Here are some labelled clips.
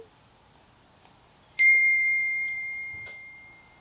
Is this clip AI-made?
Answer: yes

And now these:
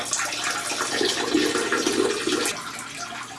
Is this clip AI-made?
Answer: no